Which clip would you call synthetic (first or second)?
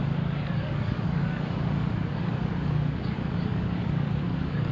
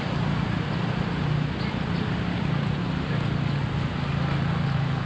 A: first